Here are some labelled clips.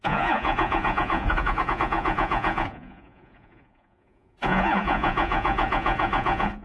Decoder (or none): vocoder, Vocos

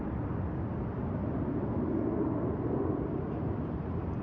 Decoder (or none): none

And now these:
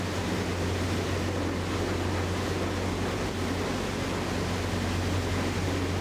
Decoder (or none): none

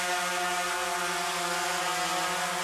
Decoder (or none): none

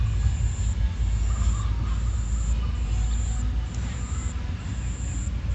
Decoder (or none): none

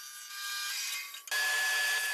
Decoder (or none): none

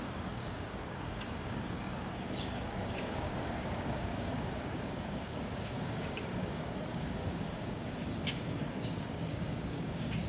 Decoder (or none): codec, DAC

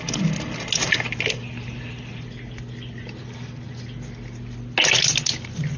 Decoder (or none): none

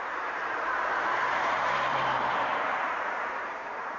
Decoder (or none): vocoder, BigVGAN v2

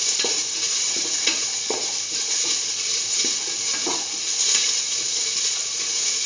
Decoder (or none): vocoder, Vocos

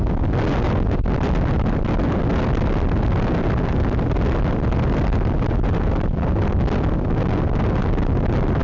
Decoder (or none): none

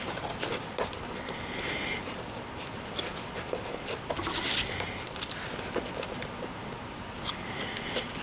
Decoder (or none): none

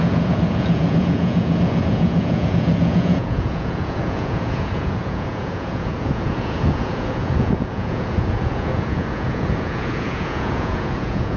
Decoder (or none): vocoder, Vocos